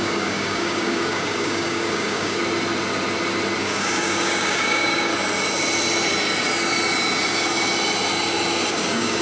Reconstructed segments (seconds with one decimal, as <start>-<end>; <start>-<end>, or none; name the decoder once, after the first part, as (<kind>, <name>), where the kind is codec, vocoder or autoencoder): 0.0-2.4 (codec, DAC); 3.6-5.1; 8.7-9.2